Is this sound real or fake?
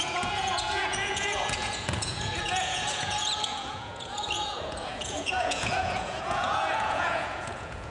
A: fake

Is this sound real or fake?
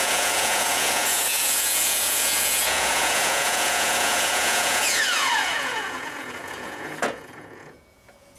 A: fake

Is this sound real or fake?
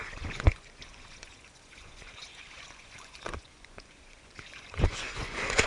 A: fake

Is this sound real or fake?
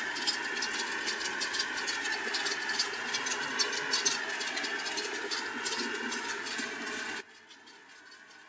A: real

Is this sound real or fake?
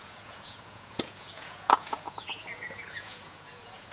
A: fake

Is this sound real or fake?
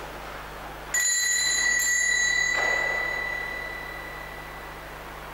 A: real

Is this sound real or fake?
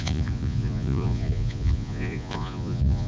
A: fake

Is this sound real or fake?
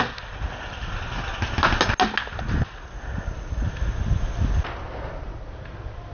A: real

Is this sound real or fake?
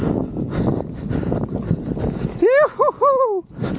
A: real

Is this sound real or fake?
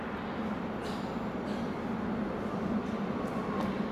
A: real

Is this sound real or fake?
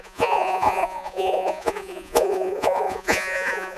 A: fake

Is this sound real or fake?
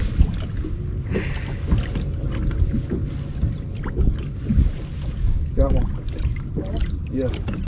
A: real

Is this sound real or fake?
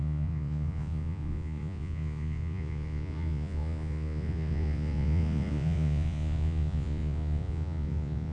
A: fake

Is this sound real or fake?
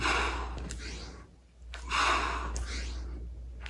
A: real